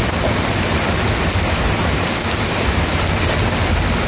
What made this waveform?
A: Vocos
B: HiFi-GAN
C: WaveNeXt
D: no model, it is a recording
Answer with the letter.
D